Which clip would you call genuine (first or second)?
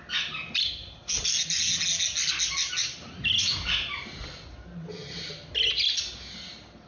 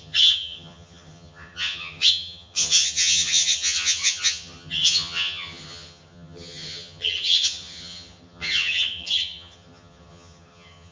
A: first